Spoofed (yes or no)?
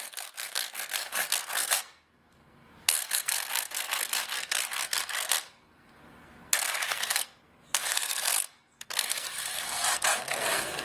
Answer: yes